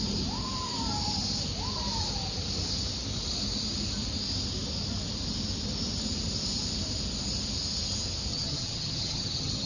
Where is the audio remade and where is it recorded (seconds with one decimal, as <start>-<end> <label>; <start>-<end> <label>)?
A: 0.0-8.3 recorded; 8.3-9.7 remade